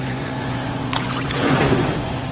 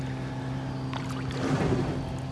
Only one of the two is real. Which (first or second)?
second